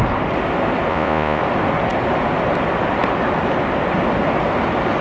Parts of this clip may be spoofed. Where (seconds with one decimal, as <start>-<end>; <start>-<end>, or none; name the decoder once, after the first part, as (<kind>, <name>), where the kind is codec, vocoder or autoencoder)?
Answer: 0.9-1.4 (vocoder, Vocos)